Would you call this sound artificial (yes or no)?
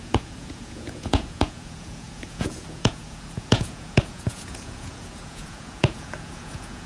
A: yes